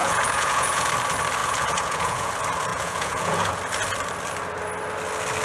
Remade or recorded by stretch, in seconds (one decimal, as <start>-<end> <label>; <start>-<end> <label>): 0.0-0.9 remade; 0.9-1.4 recorded; 1.4-2.3 remade; 2.3-2.7 recorded; 2.7-3.6 remade; 3.6-5.4 recorded